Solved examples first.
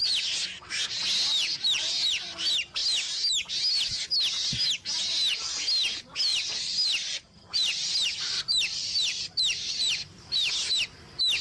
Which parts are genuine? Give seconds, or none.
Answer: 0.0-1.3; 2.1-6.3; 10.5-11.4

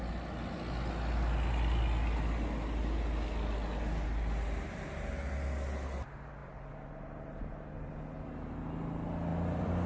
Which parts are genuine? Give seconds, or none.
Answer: 0.0-9.3

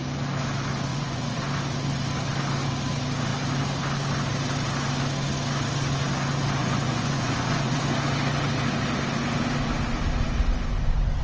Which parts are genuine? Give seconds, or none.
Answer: 0.0-0.9; 1.4-6.6; 7.8-11.2

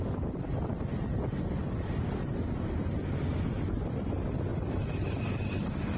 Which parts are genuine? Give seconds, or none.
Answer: 0.0-0.9; 2.3-3.3; 4.0-4.5

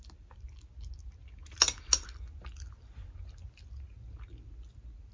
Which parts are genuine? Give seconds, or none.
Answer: 0.0-5.1